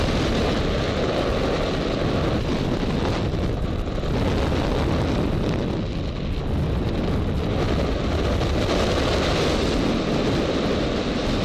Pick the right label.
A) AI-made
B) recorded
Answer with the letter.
B